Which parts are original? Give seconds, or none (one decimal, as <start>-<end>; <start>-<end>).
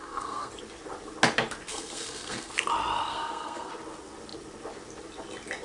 0.5-1.7; 2.5-3.1; 3.7-5.6